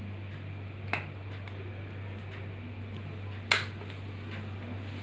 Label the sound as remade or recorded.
recorded